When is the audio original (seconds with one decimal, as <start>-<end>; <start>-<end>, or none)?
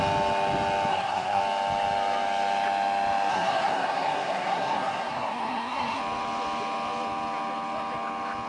0.0-0.9; 1.4-3.3; 6.0-8.5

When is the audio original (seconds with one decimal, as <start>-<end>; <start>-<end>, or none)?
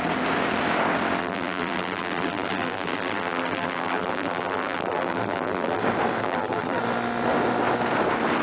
0.0-1.2; 5.8-6.2; 6.8-8.4